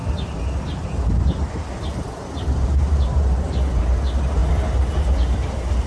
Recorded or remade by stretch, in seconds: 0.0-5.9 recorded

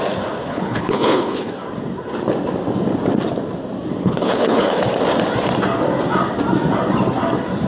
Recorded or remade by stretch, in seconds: 0.0-0.5 recorded; 0.5-1.5 remade; 1.5-4.0 recorded; 4.0-4.8 remade; 4.8-7.7 recorded

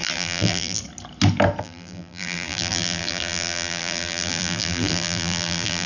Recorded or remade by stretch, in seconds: 0.0-0.8 remade; 0.8-1.6 recorded; 1.6-5.9 remade

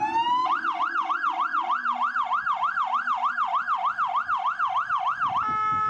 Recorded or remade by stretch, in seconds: 0.0-5.9 recorded